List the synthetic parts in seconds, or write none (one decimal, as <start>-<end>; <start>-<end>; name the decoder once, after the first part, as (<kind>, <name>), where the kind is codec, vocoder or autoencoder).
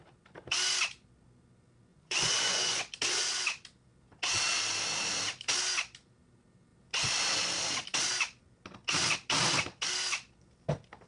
1.9-2.8 (vocoder, Vocos)